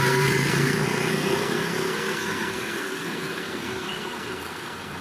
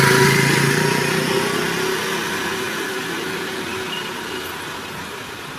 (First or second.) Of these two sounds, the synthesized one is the first